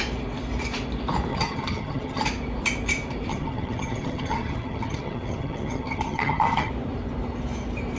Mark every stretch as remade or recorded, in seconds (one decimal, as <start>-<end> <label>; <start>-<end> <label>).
0.0-1.3 recorded; 1.3-2.2 remade; 2.2-3.3 recorded; 3.3-6.7 remade; 6.7-8.0 recorded